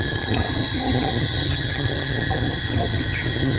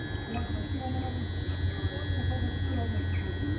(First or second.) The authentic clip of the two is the second